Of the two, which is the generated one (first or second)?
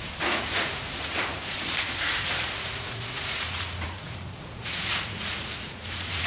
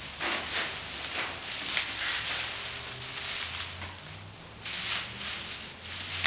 first